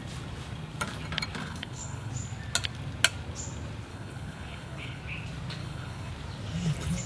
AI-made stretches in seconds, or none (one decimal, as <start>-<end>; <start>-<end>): 1.4-2.1; 3.9-5.0; 5.6-6.1